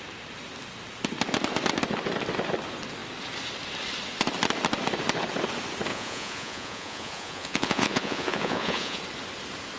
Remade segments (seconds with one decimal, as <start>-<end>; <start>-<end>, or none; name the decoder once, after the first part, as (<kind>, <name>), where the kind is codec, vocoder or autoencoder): 5.9-9.0 (vocoder, Vocos)